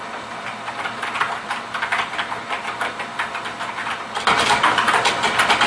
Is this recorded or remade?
recorded